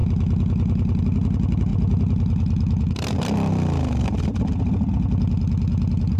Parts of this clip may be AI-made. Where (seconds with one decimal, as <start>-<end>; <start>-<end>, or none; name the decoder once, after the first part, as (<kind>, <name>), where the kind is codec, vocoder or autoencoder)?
1.7-4.9 (vocoder, BigVGAN v2)